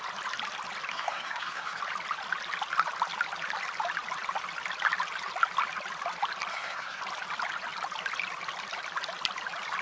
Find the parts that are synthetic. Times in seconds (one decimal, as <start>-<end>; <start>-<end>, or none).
0.9-1.8; 6.5-7.0